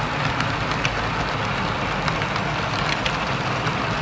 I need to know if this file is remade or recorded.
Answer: recorded